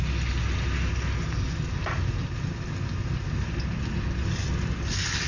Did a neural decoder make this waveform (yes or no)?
no